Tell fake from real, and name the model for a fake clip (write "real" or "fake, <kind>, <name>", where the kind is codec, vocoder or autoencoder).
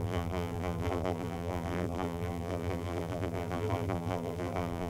fake, vocoder, BigVGAN v2